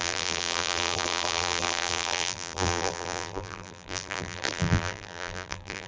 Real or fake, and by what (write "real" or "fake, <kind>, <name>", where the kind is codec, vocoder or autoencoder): fake, vocoder, BigVGAN v2